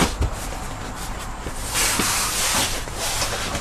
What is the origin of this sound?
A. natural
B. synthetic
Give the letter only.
A